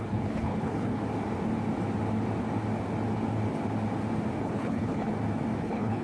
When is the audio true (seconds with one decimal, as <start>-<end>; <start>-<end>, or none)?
1.0-4.4; 5.1-5.6